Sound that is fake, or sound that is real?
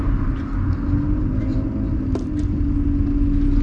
real